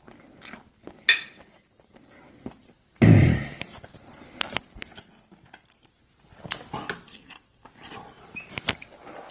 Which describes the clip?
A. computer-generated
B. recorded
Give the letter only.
B